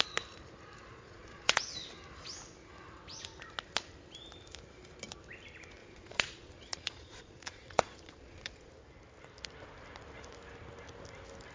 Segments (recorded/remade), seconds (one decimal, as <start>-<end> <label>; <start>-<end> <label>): 0.0-0.9 recorded; 0.9-1.6 remade; 1.6-5.8 recorded; 5.8-8.7 remade; 8.7-11.5 recorded